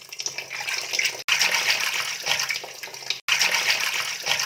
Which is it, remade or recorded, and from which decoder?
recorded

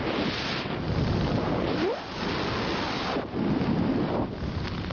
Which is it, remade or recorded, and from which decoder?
recorded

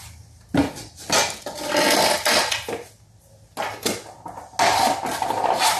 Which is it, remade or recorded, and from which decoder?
recorded